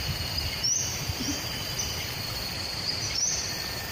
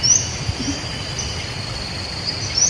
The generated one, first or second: first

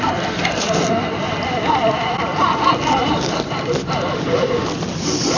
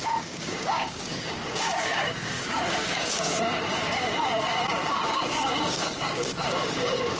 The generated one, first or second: second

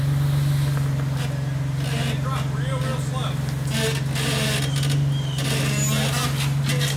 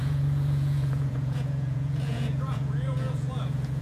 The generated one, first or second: second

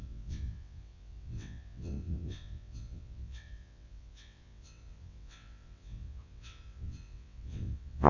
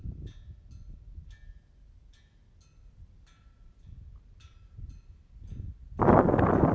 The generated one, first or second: first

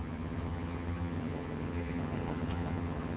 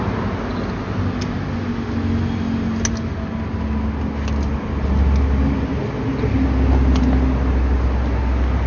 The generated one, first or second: first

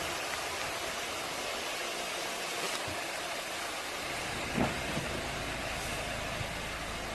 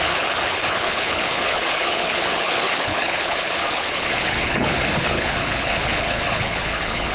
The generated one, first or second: second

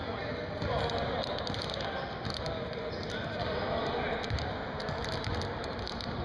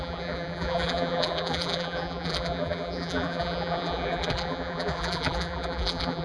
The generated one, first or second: second